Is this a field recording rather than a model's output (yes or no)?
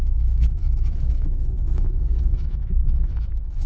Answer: no